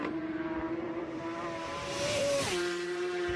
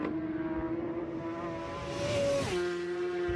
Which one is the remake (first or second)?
first